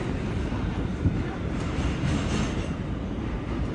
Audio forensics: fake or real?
real